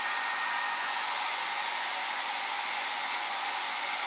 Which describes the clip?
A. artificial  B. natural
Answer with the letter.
A